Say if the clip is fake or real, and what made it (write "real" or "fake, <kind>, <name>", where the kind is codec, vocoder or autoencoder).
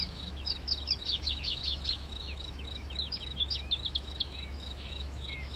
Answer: fake, autoencoder, DAC-VAE